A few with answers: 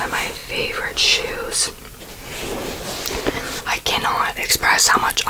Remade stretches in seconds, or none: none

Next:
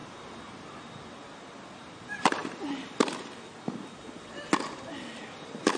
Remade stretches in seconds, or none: none